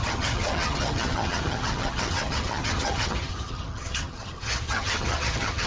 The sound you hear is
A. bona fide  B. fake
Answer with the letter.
B